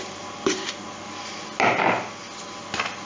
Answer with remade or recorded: recorded